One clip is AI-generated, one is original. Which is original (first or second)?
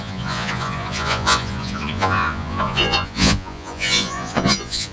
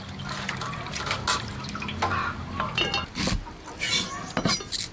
second